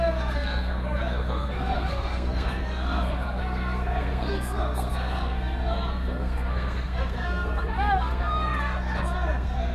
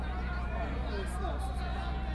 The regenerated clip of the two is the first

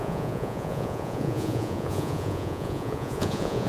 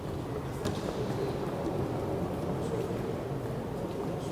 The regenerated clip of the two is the first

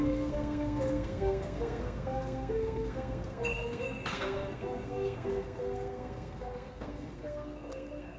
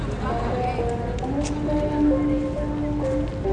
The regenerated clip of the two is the first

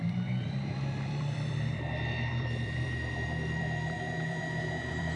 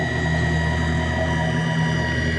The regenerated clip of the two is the first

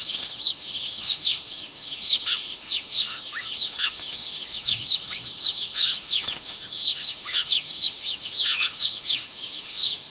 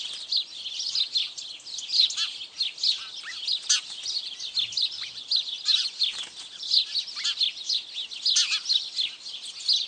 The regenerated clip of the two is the first